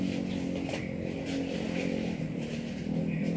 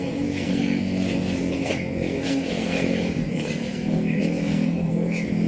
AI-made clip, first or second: second